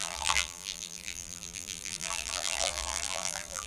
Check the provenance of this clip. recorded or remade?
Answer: remade